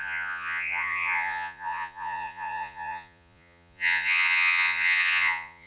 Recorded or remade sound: remade